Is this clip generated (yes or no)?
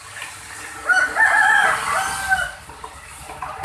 no